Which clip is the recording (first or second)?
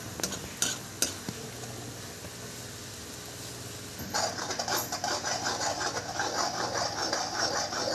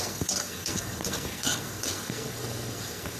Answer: first